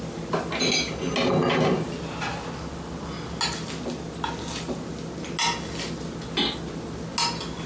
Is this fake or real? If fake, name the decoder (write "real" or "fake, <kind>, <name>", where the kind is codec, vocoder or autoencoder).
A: real